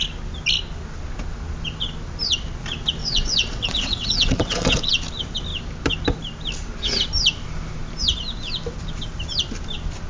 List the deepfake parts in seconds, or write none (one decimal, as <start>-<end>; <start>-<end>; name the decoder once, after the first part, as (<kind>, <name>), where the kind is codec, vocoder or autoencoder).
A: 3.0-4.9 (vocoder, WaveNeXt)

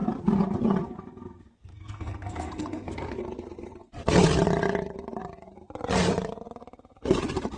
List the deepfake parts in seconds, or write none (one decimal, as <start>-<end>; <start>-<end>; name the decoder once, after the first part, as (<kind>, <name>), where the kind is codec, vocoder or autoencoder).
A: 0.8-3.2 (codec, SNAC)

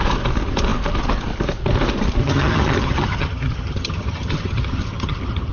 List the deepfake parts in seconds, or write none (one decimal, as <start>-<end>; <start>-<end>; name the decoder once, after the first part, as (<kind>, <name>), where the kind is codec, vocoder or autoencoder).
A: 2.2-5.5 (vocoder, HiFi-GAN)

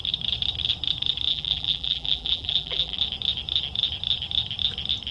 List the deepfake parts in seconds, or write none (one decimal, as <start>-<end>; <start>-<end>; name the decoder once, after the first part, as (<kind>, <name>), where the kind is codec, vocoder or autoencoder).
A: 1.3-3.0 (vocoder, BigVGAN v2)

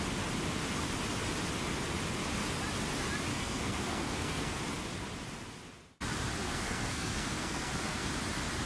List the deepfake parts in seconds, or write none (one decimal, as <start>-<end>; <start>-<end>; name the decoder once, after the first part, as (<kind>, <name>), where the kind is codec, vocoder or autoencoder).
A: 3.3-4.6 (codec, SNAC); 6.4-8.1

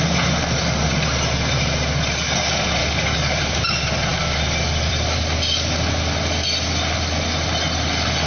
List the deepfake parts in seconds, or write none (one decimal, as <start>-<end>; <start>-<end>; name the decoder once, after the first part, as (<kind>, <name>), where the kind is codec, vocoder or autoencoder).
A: 2.8-3.4 (codec, DAC)

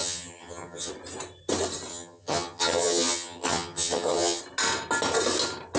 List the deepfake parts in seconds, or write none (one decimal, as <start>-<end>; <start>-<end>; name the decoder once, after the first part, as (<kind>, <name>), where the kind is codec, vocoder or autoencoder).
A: 0.0-0.9 (vocoder, HiFi-GAN); 1.9-4.4